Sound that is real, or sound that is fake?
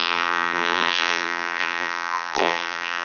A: fake